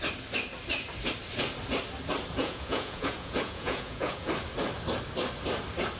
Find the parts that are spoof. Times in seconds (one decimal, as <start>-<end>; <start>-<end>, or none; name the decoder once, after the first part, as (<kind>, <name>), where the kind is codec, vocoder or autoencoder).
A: 2.4-4.3 (vocoder, Vocos)